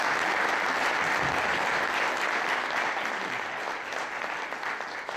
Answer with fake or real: real